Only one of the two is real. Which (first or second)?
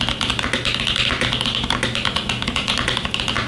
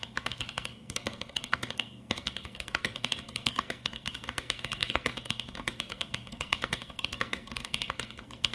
first